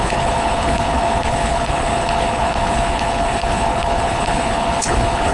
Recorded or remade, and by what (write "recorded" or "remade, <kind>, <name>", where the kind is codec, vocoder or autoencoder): remade, codec, HILCodec